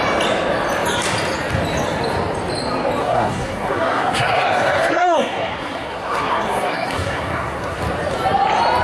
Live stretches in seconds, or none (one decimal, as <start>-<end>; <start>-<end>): 0.0-3.0; 7.8-8.8